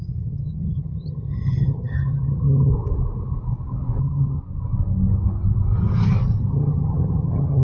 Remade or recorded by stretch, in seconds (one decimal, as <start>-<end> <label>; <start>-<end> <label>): 0.0-2.7 remade; 2.7-4.0 recorded; 4.0-4.4 remade; 4.4-6.5 recorded; 6.5-7.6 remade

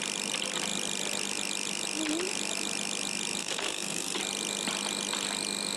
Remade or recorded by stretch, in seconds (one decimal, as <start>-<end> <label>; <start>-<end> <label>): 0.0-3.4 recorded; 3.4-4.2 remade; 4.2-5.8 recorded

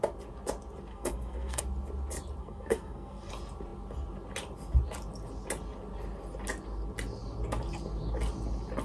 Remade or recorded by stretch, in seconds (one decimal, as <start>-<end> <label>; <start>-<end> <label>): 0.0-0.9 recorded; 0.9-1.6 remade; 1.6-2.4 recorded; 2.4-3.3 remade; 3.3-8.8 recorded

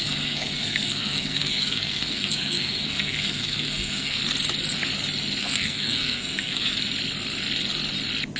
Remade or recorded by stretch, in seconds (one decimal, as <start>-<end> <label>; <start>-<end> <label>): 0.0-4.2 remade; 4.2-5.4 recorded; 5.4-6.7 remade; 6.7-8.4 recorded

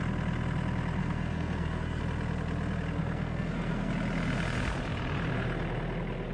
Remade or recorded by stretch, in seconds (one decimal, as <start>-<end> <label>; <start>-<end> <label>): 0.0-1.0 recorded; 1.0-2.0 remade; 2.0-3.0 recorded; 3.0-3.9 remade; 3.9-6.3 recorded

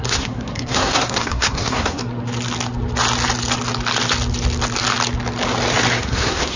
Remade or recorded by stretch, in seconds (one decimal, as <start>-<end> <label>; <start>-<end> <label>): 0.0-2.0 remade; 2.0-6.0 recorded; 6.0-6.6 remade